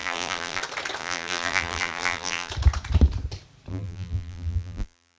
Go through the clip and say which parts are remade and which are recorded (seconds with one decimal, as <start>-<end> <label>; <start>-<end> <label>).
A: 0.0-0.6 remade; 0.6-1.0 recorded; 1.0-2.5 remade; 2.5-3.7 recorded; 3.7-5.2 remade